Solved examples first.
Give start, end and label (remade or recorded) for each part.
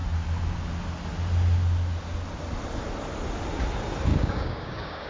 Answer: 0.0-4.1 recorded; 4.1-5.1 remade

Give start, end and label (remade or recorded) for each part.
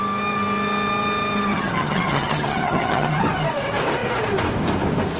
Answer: 0.0-1.5 recorded; 1.5-3.1 remade; 3.1-5.2 recorded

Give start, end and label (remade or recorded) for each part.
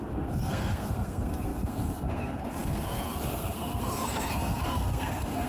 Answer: 0.0-5.5 remade